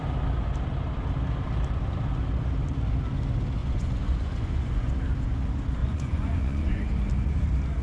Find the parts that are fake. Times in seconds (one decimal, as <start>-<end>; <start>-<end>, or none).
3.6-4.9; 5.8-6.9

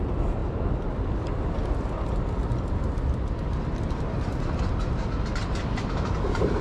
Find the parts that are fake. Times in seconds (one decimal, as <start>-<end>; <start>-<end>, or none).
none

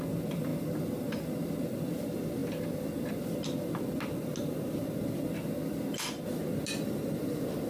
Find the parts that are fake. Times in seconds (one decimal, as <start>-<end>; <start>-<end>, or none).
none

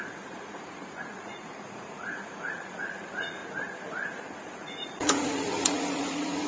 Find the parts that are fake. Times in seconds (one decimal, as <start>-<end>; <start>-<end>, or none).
0.0-3.4; 4.4-6.5

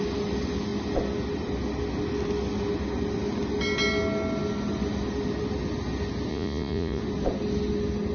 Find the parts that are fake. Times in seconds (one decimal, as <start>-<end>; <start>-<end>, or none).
6.3-7.0

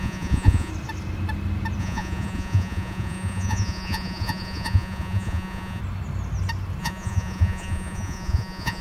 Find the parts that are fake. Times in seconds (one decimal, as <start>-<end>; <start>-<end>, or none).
0.0-0.7; 1.8-5.8; 6.8-8.8

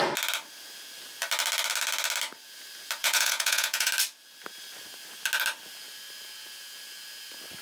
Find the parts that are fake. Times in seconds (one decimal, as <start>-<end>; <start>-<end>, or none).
3.0-3.9

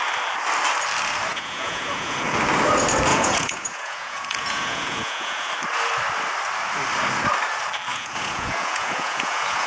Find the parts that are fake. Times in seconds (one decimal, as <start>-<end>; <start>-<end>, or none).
1.3-2.4; 3.1-5.5; 7.9-9.7